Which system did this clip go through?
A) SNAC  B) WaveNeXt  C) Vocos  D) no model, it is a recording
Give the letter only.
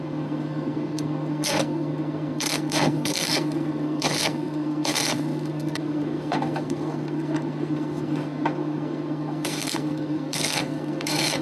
A